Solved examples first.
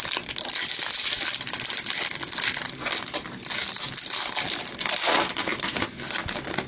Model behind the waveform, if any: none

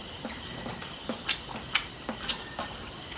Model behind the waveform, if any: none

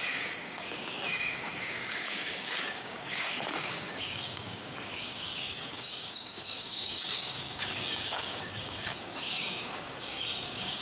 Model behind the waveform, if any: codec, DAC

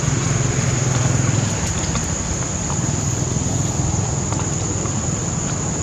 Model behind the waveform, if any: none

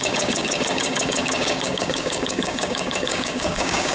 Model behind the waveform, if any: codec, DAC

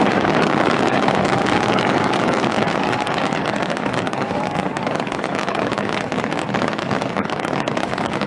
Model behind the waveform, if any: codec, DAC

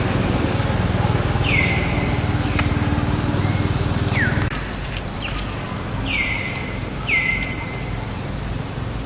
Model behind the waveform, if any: none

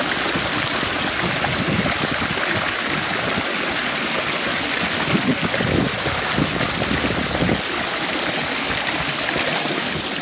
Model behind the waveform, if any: none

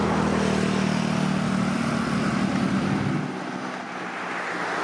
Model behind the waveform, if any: none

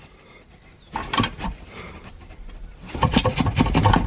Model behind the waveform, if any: none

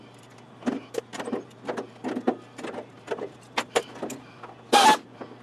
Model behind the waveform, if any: none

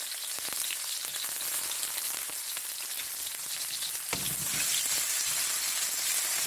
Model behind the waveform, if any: none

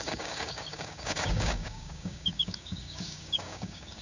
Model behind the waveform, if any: codec, DAC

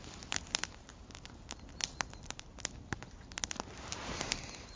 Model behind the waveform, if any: none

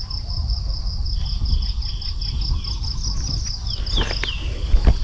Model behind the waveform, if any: none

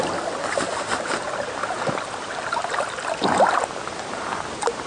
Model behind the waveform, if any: none